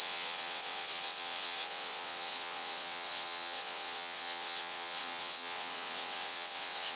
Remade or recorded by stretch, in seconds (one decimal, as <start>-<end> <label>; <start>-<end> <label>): 0.0-7.0 remade